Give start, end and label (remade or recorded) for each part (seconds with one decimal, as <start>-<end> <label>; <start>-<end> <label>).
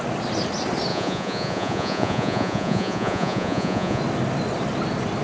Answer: 0.0-0.9 recorded; 0.9-4.0 remade; 4.0-5.2 recorded